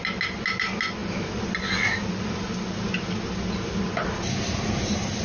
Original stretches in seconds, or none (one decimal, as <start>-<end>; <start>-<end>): 0.0-5.2